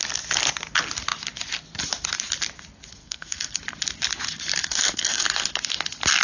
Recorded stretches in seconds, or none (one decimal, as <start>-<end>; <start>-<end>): 0.0-3.0; 3.6-4.6; 5.2-6.2